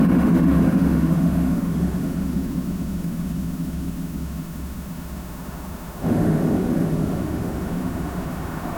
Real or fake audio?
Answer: fake